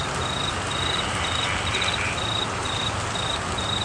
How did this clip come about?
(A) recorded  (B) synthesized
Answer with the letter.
A